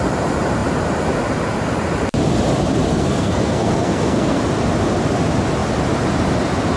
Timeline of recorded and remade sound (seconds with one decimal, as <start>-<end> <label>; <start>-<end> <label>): 0.0-2.9 recorded; 2.9-4.4 remade; 4.4-6.8 recorded